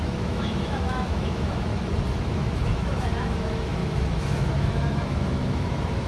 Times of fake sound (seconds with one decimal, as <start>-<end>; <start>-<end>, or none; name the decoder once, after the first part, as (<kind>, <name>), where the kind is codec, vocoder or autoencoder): 0.0-1.7 (autoencoder, DAC-VAE); 2.2-6.1